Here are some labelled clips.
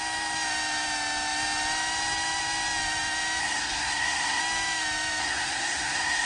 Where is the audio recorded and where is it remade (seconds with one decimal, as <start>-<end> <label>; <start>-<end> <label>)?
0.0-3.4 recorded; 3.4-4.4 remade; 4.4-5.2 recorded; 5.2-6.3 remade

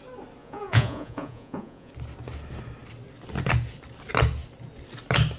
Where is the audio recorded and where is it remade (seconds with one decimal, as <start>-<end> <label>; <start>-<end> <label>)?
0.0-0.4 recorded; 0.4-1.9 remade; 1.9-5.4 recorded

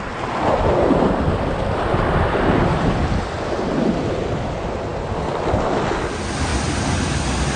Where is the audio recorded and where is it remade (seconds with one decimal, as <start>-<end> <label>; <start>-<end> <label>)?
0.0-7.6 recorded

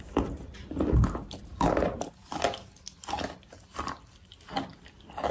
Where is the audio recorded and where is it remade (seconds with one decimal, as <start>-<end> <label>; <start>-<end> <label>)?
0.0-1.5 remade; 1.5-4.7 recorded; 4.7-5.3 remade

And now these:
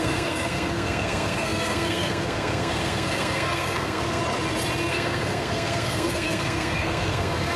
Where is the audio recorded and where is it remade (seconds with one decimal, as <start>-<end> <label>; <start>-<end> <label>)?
0.0-4.2 remade; 4.2-4.9 recorded; 4.9-7.6 remade